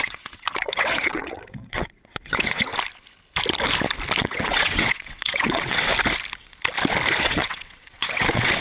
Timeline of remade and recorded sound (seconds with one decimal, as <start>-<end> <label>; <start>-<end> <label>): 0.0-2.7 remade; 2.7-4.2 recorded; 4.2-5.9 remade; 5.9-7.2 recorded; 7.2-8.6 remade